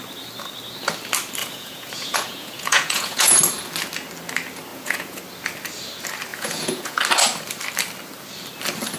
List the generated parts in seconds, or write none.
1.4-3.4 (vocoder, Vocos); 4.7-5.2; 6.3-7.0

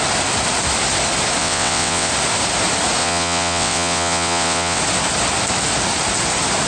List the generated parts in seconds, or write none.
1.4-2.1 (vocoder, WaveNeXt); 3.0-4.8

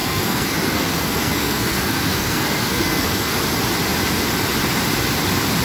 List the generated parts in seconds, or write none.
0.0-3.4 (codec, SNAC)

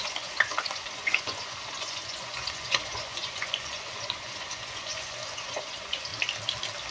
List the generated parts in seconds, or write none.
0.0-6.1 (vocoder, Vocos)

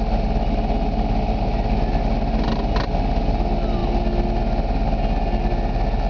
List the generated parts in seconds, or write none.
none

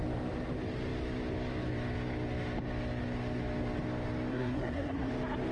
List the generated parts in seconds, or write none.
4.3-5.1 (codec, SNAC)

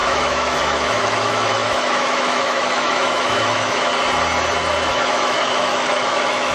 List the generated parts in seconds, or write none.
0.0-3.9 (autoencoder, DAC-VAE); 4.9-6.5

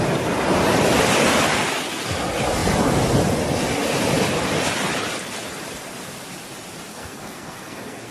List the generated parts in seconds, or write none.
6.9-8.1 (codec, SNAC)